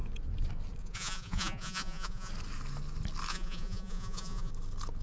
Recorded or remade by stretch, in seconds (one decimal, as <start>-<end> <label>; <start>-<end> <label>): 0.0-0.8 recorded; 0.8-2.3 remade; 2.3-3.3 recorded; 3.3-4.5 remade; 4.5-5.0 recorded